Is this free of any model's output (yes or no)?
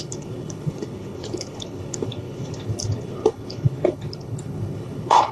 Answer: no